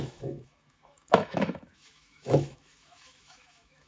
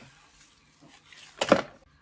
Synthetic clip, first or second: first